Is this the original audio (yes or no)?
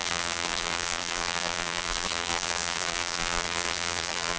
no